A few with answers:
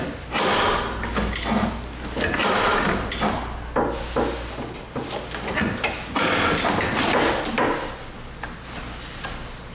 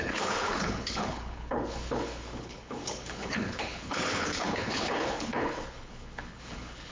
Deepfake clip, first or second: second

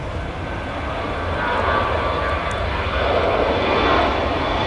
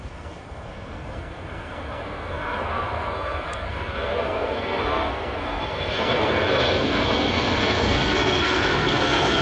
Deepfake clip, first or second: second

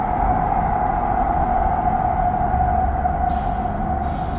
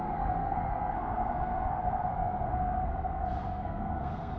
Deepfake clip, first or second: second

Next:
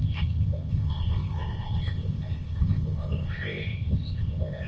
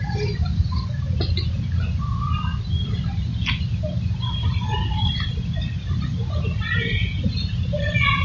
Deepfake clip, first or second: first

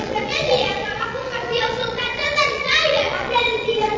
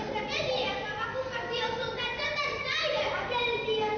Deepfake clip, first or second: first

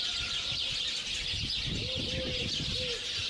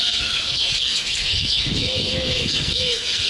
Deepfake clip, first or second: second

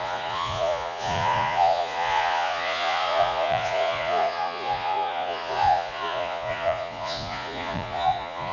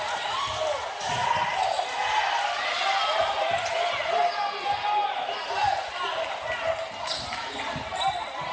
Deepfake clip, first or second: first